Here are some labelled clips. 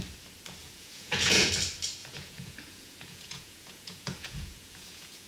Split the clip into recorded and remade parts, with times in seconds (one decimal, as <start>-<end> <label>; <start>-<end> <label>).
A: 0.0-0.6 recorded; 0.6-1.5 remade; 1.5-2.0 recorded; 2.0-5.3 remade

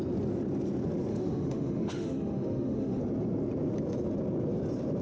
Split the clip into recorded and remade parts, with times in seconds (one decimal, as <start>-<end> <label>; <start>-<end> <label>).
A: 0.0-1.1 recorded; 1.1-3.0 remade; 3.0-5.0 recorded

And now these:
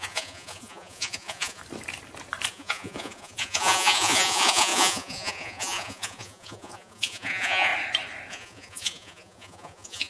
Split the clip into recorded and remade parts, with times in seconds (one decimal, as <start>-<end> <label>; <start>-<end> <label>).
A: 0.0-1.6 remade; 1.6-2.5 recorded; 2.5-7.7 remade; 7.7-8.3 recorded; 8.3-10.1 remade

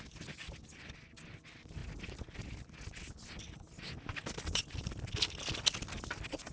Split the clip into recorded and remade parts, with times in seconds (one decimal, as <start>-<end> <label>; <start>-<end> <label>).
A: 0.0-6.5 recorded

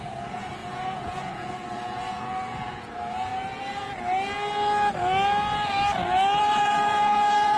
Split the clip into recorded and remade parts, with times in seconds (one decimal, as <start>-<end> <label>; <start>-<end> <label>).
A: 0.0-3.3 remade; 3.3-6.4 recorded; 6.4-7.6 remade